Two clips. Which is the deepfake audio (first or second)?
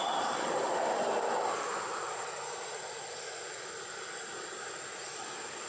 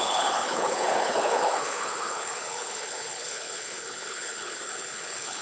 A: second